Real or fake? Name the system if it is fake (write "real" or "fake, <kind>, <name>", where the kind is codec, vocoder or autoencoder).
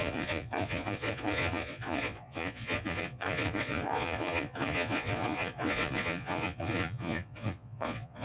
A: fake, vocoder, Vocos